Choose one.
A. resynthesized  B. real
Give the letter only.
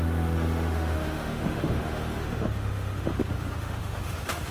A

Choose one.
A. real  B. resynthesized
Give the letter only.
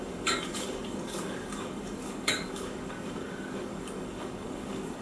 B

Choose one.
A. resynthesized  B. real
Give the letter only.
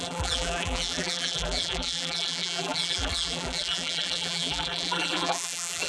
A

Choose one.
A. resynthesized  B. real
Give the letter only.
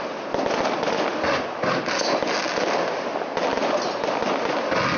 B